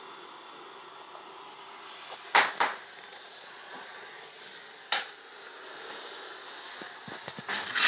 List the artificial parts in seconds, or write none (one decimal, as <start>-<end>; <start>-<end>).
3.1-4.4